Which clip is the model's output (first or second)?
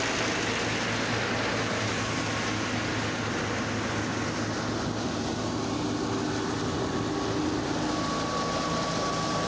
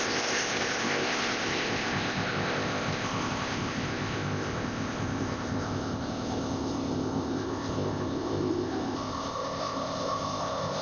second